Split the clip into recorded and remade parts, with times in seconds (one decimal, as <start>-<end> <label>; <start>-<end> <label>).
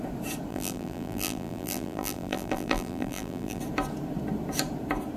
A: 0.0-0.5 recorded; 0.5-3.6 remade; 3.6-5.2 recorded